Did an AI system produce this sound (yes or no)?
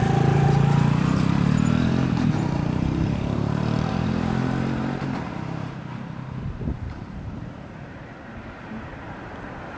yes